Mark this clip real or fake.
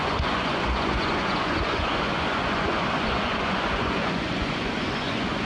fake